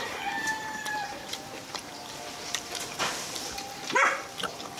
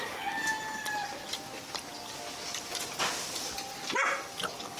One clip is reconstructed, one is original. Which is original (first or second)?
second